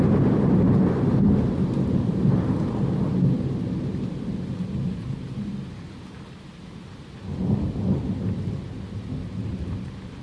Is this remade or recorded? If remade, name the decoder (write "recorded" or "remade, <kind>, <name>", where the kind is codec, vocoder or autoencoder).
recorded